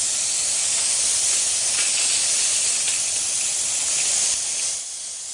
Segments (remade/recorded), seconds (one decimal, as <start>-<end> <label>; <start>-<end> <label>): 0.0-5.3 recorded